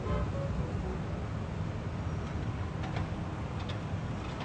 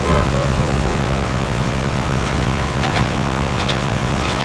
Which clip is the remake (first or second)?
second